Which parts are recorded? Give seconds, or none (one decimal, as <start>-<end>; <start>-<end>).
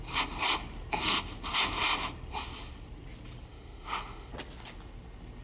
0.0-3.5; 4.3-5.4